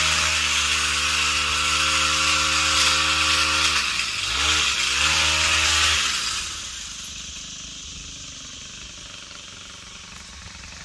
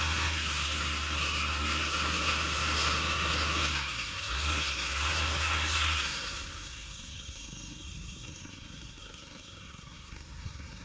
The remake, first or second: second